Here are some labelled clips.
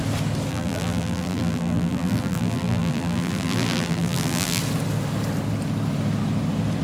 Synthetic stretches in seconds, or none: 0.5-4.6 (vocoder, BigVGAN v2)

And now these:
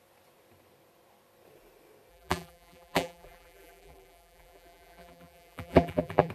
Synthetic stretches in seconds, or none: 2.1-6.3 (vocoder, BigVGAN v2)

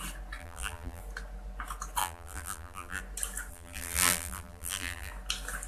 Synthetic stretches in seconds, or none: 0.4-1.0 (vocoder, BigVGAN v2); 2.0-3.0; 3.5-5.1

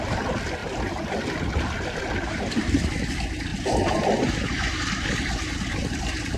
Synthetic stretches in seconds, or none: none

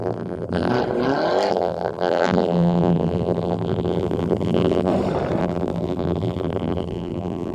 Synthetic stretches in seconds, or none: 0.0-0.7 (vocoder, BigVGAN v2); 1.5-4.9; 5.4-7.5

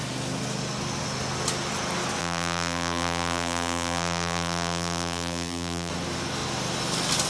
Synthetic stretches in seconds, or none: 2.2-5.9 (vocoder, BigVGAN v2)